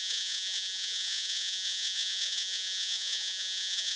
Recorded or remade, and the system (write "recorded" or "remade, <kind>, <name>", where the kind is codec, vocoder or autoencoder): remade, vocoder, Vocos